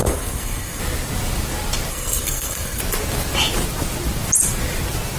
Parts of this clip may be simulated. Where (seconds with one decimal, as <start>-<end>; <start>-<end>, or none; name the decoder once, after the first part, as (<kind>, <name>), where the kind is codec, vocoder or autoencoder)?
0.0-0.8 (codec, SNAC); 1.9-2.8